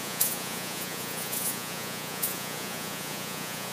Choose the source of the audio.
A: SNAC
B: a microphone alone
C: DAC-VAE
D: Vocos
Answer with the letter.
D